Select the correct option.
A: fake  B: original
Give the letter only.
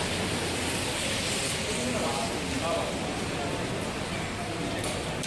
B